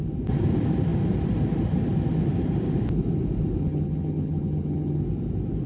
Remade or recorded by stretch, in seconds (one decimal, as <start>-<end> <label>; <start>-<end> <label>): 0.0-3.6 recorded; 3.6-5.0 remade; 5.0-5.7 recorded